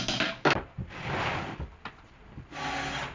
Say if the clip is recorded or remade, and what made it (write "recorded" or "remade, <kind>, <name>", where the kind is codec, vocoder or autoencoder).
recorded